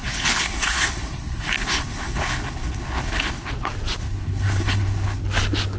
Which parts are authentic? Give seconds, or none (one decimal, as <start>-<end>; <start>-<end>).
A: 3.5-4.0; 5.2-5.8